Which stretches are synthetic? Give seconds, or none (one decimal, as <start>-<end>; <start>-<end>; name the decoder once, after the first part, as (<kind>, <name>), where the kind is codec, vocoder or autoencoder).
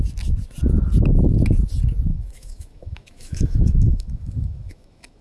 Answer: 2.1-5.2 (autoencoder, DAC-VAE)